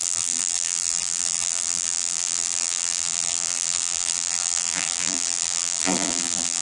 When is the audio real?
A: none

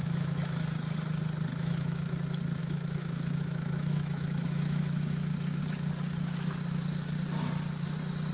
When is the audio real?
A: 0.7-1.5; 2.1-2.6; 5.6-8.3

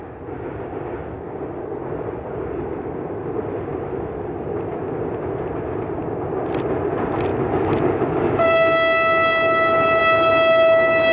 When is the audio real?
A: 0.0-11.1

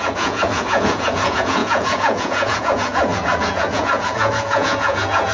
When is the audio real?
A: none

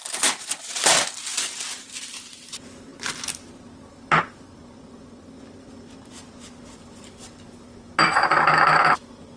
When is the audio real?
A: 0.0-9.4

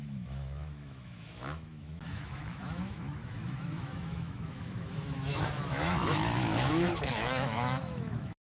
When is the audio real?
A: none

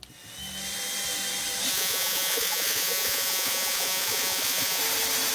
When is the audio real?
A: 0.0-1.7; 4.8-5.3

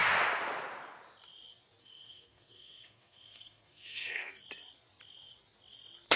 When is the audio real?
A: 0.0-1.8; 4.3-6.2